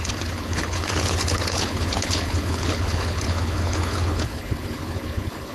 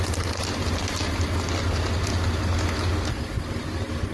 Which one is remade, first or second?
first